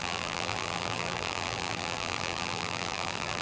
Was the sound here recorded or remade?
remade